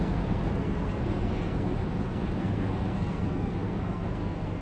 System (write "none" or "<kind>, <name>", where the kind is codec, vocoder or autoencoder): codec, SNAC